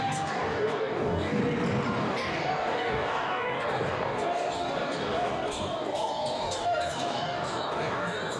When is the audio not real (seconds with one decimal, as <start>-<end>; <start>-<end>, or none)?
0.0-1.4; 2.0-8.4